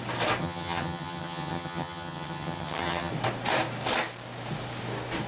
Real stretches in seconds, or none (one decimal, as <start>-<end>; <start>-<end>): 0.0-0.4; 3.1-5.3